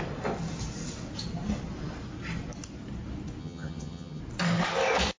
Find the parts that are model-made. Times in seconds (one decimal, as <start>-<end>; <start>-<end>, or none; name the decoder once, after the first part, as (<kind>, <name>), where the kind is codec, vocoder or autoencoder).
3.4-4.2 (vocoder, HiFi-GAN)